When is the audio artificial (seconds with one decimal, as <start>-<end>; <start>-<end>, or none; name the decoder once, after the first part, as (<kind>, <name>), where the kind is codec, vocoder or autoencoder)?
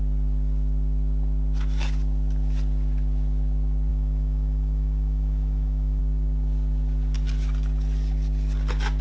3.9-6.0 (autoencoder, DAC-VAE)